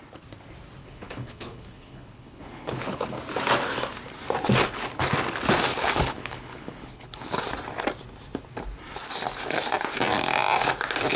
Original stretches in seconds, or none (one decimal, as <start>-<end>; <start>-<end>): 0.0-0.8; 3.2-5.7; 7.4-11.2